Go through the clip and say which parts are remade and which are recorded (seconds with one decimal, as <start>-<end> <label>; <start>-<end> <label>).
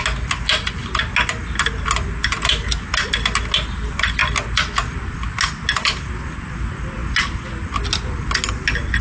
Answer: 0.0-9.0 recorded